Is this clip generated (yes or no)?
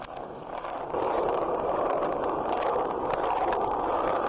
yes